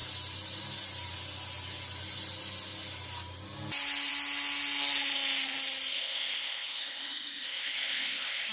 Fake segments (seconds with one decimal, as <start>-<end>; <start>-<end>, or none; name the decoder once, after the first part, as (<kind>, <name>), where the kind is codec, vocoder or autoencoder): 5.9-8.5 (codec, ZipCodec)